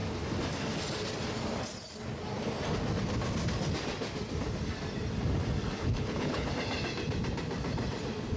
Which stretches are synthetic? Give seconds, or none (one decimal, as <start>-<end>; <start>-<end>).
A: 5.8-6.5